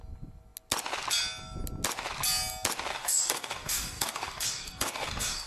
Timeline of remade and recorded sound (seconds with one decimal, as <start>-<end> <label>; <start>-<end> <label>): 0.0-2.9 recorded; 2.9-5.5 remade